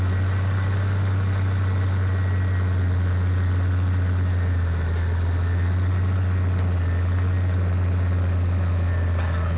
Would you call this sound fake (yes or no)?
no